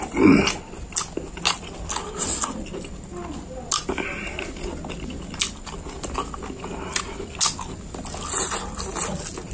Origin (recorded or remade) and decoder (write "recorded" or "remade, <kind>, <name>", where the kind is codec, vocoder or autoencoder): recorded